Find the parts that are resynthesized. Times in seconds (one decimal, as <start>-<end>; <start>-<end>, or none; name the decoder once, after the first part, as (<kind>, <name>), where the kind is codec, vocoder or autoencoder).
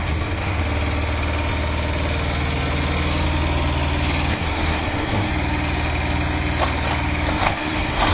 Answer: 0.0-0.6 (codec, SNAC); 4.3-5.3; 7.3-8.1